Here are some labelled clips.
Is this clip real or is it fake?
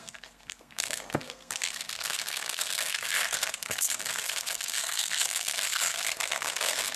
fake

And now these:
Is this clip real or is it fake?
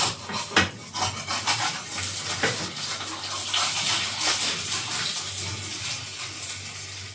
real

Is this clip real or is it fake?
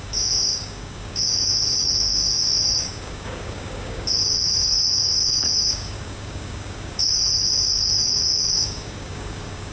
fake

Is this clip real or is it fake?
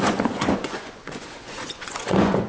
fake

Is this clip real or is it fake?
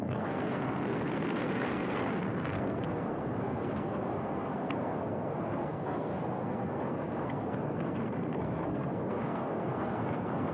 fake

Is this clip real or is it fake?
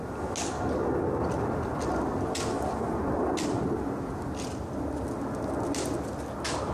real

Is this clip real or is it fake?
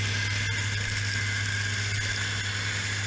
real